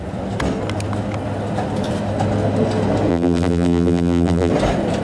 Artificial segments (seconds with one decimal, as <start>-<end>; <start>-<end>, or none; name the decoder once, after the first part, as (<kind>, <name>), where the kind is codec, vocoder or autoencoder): 3.1-4.5 (vocoder, BigVGAN v2)